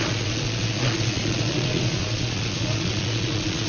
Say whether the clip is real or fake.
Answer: fake